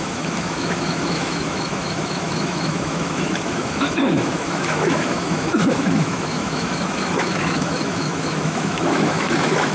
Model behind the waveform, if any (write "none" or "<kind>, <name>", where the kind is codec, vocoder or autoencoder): autoencoder, DAC-VAE